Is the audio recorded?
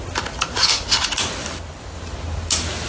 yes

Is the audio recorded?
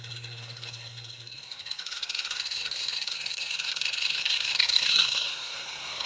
no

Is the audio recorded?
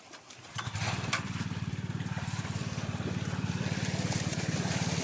no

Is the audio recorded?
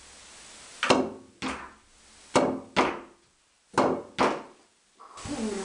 yes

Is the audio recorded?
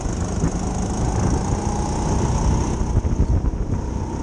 yes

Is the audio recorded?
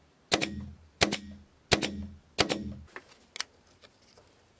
yes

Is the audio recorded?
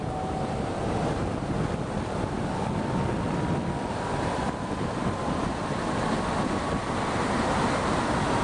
yes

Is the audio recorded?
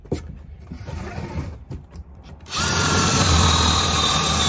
no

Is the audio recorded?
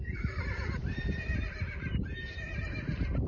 no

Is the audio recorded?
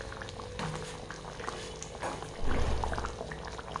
yes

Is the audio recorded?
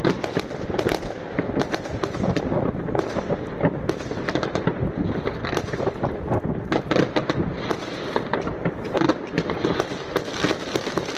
yes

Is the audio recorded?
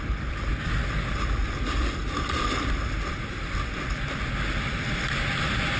yes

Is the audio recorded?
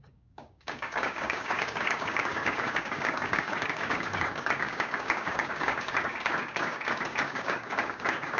no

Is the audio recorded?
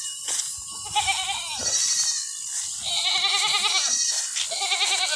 yes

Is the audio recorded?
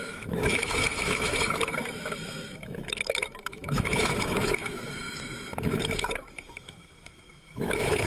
no